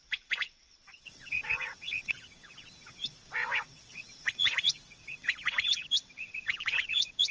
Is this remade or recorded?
remade